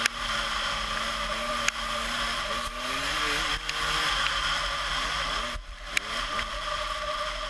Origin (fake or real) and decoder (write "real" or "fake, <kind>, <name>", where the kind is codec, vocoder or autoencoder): real